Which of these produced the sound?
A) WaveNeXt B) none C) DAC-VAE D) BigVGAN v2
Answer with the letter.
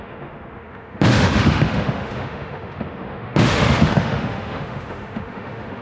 C